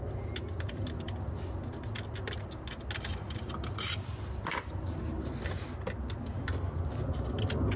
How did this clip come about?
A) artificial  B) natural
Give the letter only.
B